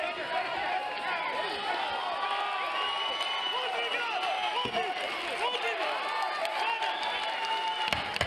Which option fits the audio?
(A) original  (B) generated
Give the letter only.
A